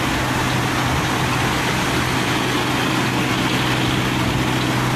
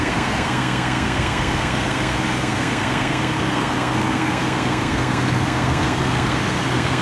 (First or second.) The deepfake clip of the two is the second